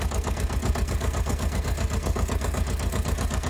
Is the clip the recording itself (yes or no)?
no